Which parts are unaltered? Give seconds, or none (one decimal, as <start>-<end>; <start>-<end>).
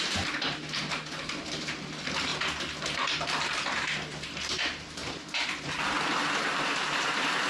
2.3-4.2